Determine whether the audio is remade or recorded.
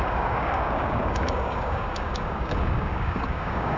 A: remade